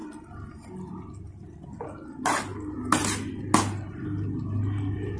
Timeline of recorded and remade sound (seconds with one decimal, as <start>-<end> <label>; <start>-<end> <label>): 0.0-5.2 recorded